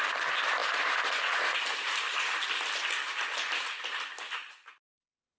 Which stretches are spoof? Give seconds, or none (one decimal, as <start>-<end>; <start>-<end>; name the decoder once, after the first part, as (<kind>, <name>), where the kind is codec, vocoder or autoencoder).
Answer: none

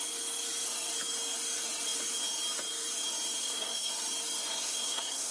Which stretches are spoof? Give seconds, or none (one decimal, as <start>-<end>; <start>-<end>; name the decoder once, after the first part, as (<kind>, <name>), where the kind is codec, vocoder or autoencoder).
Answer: 3.4-3.9 (codec, SNAC); 4.5-5.3

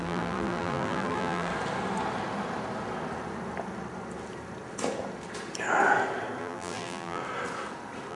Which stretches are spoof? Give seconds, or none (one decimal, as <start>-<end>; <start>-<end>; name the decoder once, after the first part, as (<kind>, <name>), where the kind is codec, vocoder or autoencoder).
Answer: 0.0-1.5 (vocoder, BigVGAN v2); 6.4-7.2

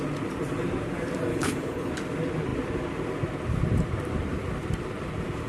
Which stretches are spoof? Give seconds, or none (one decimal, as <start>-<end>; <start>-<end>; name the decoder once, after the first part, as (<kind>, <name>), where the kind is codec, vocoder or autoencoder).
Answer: 1.3-1.9 (codec, HILCodec)

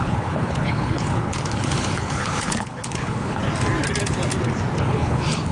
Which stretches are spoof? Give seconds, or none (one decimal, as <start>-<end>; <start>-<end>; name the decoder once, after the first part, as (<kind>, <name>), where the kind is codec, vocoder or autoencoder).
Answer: 0.0-3.4 (codec, HILCodec); 4.8-5.5

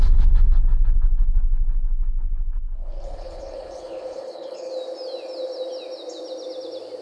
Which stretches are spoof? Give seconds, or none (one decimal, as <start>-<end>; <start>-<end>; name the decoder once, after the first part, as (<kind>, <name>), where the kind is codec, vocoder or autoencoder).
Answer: 0.0-4.7 (codec, HILCodec)

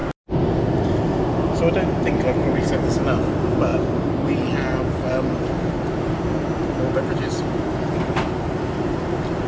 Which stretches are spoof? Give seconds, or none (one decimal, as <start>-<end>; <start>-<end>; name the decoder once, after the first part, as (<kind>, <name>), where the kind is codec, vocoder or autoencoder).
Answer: none

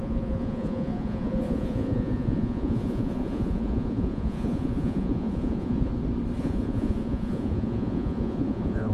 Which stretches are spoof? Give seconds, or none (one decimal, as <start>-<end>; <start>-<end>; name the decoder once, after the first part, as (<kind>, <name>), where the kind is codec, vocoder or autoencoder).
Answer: 0.0-5.9 (vocoder, Vocos); 6.4-8.9